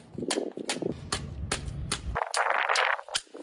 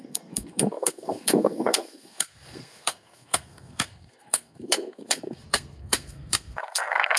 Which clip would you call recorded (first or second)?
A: first